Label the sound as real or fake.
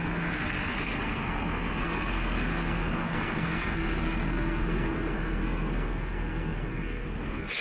fake